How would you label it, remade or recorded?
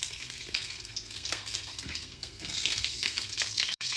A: remade